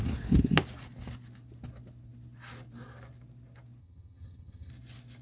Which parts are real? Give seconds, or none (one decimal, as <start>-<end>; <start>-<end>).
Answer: 0.0-3.8; 4.7-5.2